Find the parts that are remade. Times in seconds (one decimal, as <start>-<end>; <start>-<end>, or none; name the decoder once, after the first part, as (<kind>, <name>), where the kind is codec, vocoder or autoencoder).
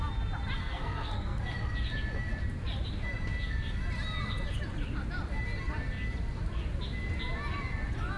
0.6-1.4 (codec, SNAC)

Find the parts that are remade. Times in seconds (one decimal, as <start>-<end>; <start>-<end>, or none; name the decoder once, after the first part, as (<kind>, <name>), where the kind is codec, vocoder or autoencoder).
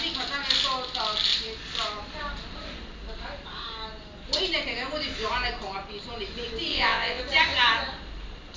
6.7-7.2 (vocoder, WaveNeXt)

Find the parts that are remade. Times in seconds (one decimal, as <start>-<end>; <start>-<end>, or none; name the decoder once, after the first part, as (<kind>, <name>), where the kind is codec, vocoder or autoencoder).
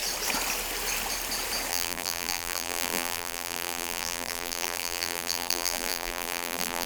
1.7-6.9 (vocoder, BigVGAN v2)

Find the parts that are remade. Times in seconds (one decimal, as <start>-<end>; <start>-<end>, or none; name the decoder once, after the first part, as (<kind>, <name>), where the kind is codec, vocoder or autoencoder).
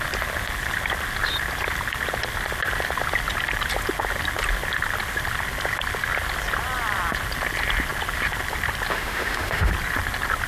8.9-9.7 (autoencoder, DAC-VAE)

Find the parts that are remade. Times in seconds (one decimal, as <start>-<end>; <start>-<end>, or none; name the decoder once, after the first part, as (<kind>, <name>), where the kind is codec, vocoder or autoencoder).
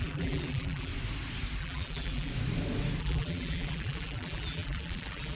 0.0-0.9 (vocoder, BigVGAN v2); 1.6-2.3; 3.0-5.4